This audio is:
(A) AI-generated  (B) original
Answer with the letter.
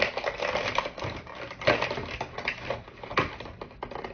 B